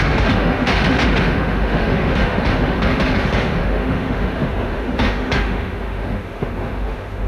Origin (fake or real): fake